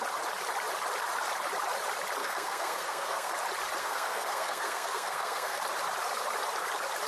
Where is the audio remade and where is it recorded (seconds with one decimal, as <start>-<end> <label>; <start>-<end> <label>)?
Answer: 0.0-2.2 recorded; 2.2-3.3 remade; 3.3-3.8 recorded; 3.8-5.6 remade; 5.6-7.1 recorded